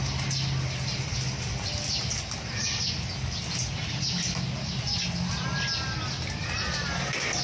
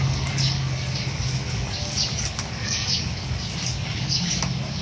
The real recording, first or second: first